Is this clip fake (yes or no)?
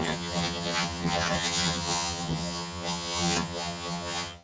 yes